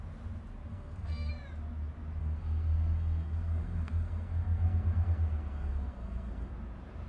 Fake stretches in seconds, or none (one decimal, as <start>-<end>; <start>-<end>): 0.7-1.3; 2.2-6.5